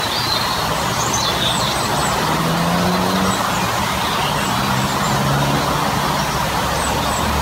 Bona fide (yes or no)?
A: yes